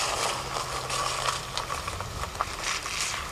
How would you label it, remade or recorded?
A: recorded